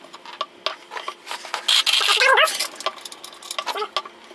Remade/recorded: recorded